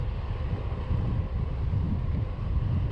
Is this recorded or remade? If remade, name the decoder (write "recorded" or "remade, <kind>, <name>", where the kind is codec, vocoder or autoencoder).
recorded